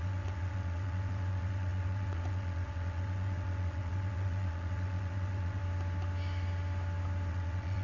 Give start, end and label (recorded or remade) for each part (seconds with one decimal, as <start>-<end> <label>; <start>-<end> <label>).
0.0-5.6 remade; 5.6-7.3 recorded; 7.3-7.8 remade